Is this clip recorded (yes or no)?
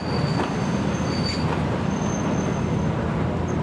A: yes